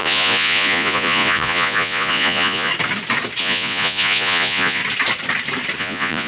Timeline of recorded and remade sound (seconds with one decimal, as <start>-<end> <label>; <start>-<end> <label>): 0.0-2.7 remade; 2.7-3.4 recorded; 3.4-4.8 remade; 4.8-5.8 recorded; 5.8-6.3 remade